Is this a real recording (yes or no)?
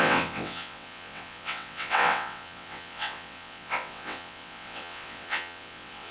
no